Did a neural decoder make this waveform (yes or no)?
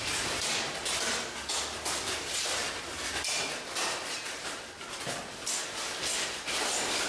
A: no